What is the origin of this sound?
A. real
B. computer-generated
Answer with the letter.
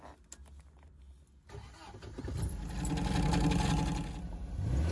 A